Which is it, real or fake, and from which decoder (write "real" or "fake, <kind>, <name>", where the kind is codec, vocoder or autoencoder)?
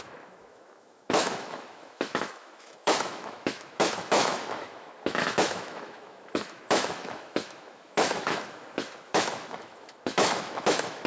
fake, autoencoder, DAC-VAE